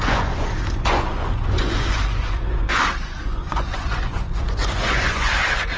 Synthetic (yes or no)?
yes